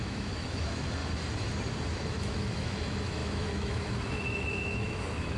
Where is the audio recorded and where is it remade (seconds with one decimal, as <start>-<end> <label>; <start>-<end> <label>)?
0.0-1.0 remade; 1.0-1.9 recorded; 1.9-5.4 remade